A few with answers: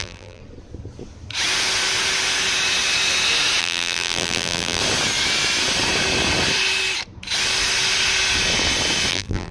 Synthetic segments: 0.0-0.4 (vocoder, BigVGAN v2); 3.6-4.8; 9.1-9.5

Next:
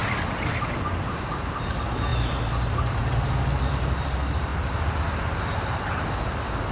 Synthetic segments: 1.0-4.5 (vocoder, BigVGAN v2); 5.8-6.7

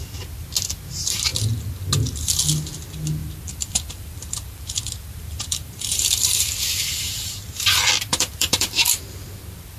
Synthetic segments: 3.2-6.6 (vocoder, BigVGAN v2); 8.1-9.0